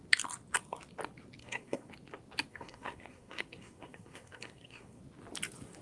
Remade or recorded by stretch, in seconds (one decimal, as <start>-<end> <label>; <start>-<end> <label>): 0.0-1.4 recorded; 1.4-1.9 remade; 1.9-2.5 recorded; 2.5-5.0 remade; 5.0-5.8 recorded